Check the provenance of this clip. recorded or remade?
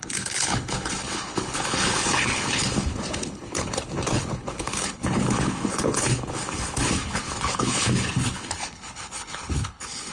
remade